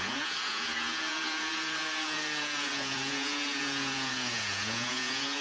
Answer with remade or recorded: remade